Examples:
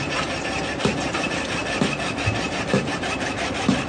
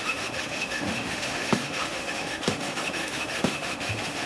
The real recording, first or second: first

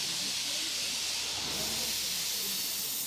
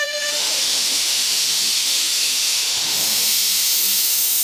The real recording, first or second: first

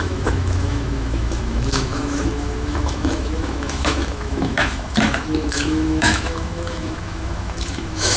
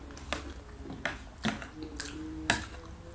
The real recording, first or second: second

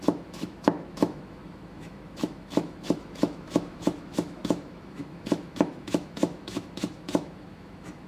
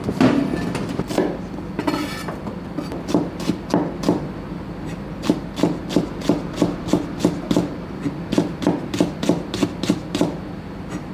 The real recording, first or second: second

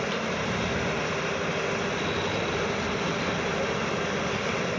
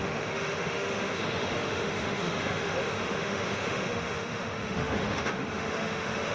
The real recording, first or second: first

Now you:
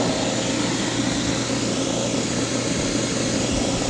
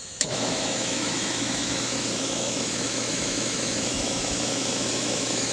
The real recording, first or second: first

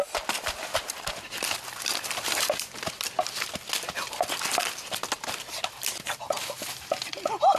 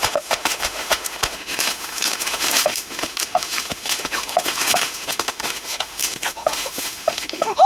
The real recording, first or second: first